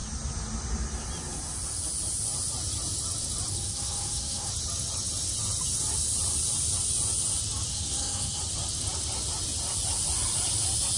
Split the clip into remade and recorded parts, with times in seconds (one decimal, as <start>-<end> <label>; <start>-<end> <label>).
0.0-3.5 recorded; 3.5-4.5 remade; 4.5-7.7 recorded; 7.7-8.4 remade; 8.4-11.0 recorded